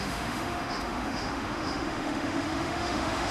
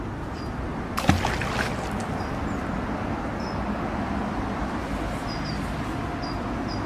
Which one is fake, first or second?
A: first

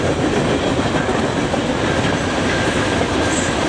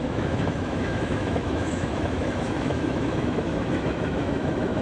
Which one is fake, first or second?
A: second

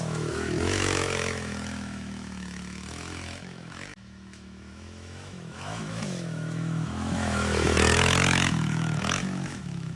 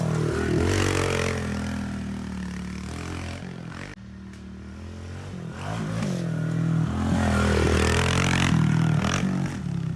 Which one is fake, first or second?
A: first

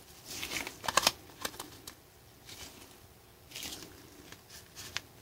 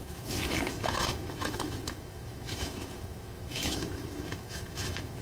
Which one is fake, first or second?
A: second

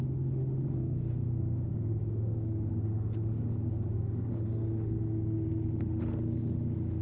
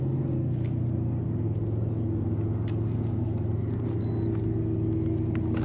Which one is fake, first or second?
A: first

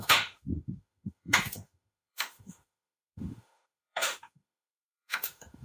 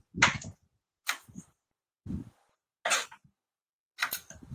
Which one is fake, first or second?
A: first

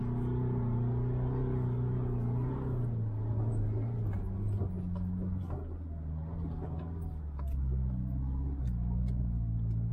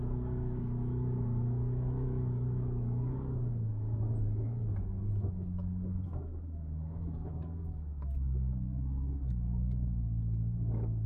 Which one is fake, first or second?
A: second